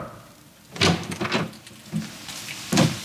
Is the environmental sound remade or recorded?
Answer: recorded